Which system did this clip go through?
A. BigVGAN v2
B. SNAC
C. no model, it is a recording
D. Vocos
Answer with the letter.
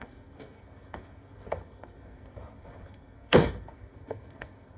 B